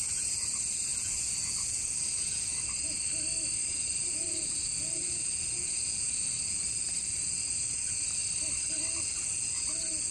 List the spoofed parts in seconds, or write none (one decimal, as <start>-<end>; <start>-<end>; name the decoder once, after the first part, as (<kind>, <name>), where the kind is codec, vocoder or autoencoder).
0.0-3.1 (vocoder, Vocos); 3.7-8.2; 8.9-10.1